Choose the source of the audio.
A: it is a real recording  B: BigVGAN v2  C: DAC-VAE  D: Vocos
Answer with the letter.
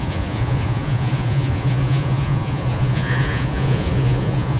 D